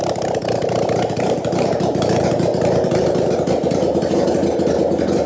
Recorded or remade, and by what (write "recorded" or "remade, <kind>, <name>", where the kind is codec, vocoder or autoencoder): remade, vocoder, BigVGAN v2